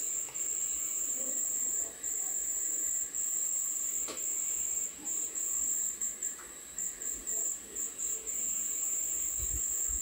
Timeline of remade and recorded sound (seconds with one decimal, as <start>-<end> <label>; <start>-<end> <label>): 0.0-0.6 recorded; 0.6-10.0 remade